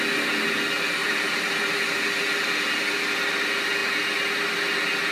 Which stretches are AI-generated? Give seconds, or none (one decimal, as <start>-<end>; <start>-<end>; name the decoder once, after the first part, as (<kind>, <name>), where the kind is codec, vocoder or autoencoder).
1.0-1.7 (vocoder, BigVGAN v2)